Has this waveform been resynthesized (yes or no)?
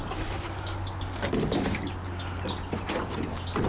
no